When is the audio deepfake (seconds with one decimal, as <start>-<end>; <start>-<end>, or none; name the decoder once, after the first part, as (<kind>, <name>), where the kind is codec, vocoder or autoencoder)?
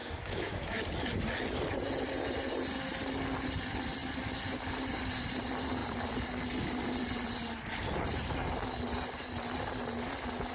0.0-0.8 (autoencoder, DAC-VAE)